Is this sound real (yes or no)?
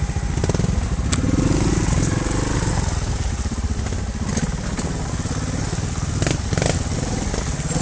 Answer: yes